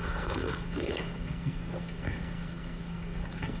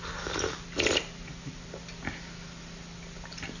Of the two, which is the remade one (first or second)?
first